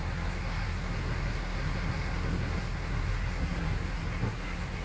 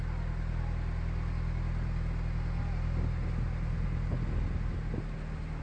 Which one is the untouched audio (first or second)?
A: second